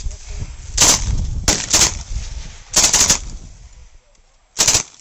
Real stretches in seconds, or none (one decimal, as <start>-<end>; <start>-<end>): 0.0-5.0